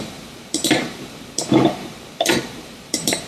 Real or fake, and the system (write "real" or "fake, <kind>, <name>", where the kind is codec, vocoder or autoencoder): fake, vocoder, BigVGAN v2